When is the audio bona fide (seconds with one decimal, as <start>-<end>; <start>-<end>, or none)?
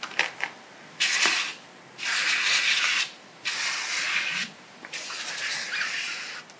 0.0-6.6